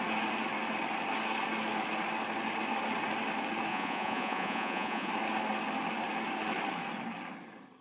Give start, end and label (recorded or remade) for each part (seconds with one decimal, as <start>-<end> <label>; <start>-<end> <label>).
0.0-3.7 recorded; 3.7-5.1 remade; 5.1-7.8 recorded